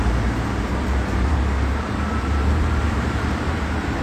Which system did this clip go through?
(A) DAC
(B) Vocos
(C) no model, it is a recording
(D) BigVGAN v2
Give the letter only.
D